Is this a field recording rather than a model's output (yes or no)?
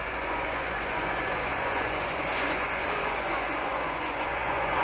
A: no